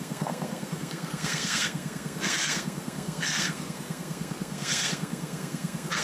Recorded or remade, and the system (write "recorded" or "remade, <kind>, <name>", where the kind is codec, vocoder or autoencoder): remade, codec, SNAC